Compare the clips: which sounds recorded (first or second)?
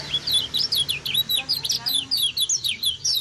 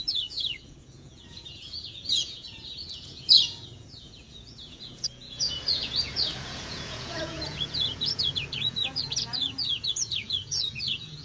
first